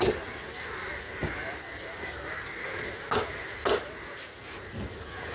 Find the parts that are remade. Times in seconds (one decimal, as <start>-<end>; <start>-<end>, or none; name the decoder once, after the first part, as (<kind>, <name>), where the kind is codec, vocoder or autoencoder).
none